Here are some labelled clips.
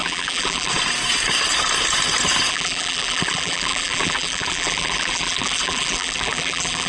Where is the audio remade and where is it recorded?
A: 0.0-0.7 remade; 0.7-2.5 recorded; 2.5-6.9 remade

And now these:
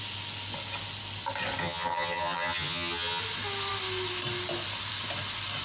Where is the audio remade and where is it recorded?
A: 0.0-1.6 recorded; 1.6-3.2 remade; 3.2-5.6 recorded

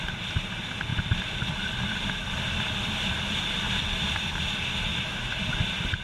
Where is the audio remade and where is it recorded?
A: 0.0-4.9 recorded; 4.9-5.4 remade; 5.4-6.0 recorded

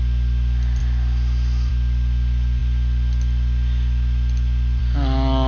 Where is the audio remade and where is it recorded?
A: 0.0-5.5 recorded

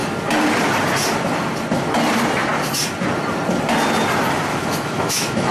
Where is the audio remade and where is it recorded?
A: 0.0-4.5 recorded; 4.5-5.5 remade